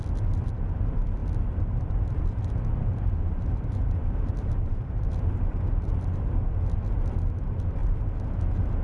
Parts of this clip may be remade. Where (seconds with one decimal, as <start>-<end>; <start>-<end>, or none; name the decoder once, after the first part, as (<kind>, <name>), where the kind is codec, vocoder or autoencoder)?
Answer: 2.8-6.4 (vocoder, BigVGAN v2)